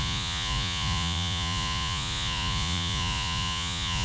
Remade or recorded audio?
remade